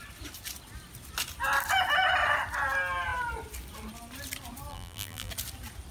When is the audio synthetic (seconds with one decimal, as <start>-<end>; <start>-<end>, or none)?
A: 4.7-5.3